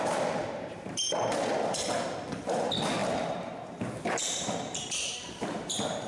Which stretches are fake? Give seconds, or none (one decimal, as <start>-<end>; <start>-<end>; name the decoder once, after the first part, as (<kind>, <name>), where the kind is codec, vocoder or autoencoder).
0.4-1.5 (vocoder, BigVGAN v2); 3.0-6.1